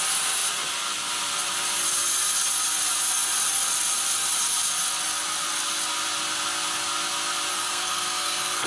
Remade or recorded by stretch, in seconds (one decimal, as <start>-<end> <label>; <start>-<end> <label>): 0.0-7.5 recorded; 7.5-8.7 remade

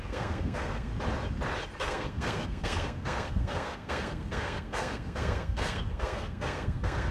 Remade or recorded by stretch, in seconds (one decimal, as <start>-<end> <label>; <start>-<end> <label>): 0.0-0.9 remade; 0.9-1.8 recorded; 1.8-7.1 remade

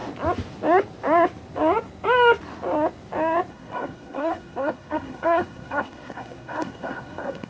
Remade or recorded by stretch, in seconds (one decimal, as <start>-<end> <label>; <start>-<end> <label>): 0.0-3.5 recorded; 3.5-7.5 remade

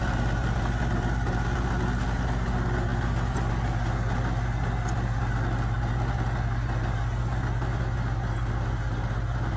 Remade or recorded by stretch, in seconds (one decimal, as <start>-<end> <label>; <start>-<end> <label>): 0.0-9.6 recorded

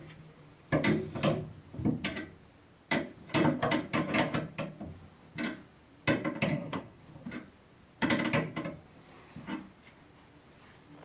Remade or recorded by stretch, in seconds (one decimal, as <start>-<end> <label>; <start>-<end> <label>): 0.0-6.5 recorded; 6.5-7.0 remade; 7.0-11.0 recorded

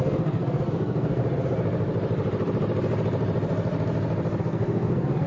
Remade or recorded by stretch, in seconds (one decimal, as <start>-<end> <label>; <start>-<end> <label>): 0.0-1.2 remade; 1.2-4.4 recorded; 4.4-5.3 remade